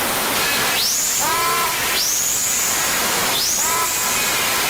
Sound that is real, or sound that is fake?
fake